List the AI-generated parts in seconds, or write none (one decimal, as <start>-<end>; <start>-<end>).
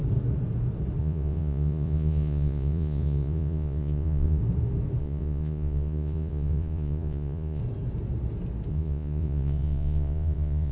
1.0-4.4; 5.0-7.6; 8.7-10.7